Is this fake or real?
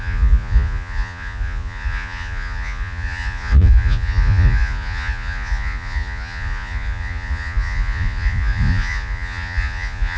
fake